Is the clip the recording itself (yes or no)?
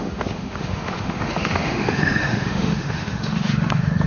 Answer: no